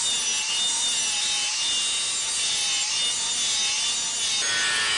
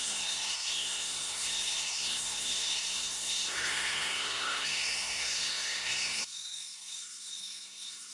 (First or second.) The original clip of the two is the first